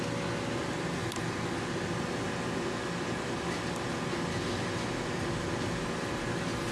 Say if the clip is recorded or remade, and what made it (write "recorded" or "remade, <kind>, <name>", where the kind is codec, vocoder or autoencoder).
recorded